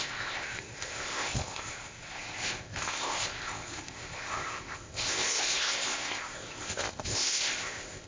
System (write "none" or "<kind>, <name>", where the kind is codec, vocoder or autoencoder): codec, ZipCodec